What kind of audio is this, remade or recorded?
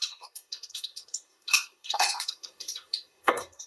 remade